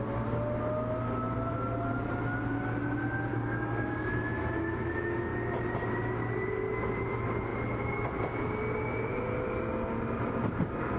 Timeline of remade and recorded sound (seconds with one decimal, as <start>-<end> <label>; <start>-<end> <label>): 0.0-3.3 recorded; 3.3-4.1 remade; 4.1-11.0 recorded